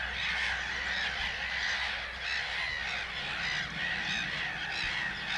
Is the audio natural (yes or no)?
yes